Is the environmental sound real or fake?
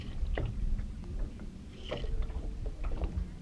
real